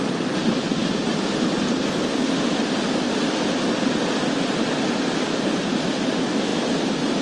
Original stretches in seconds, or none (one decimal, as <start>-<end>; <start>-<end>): 0.0-7.2